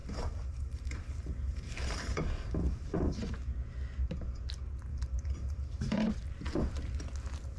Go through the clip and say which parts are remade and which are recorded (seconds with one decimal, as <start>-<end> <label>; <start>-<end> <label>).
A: 0.0-3.3 remade; 3.3-4.9 recorded; 4.9-6.1 remade; 6.1-7.6 recorded